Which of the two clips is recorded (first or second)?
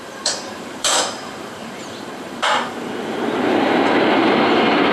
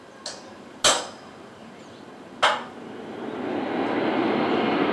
second